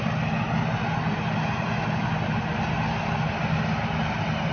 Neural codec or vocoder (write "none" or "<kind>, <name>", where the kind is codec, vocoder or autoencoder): none